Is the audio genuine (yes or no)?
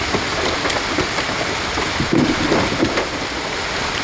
yes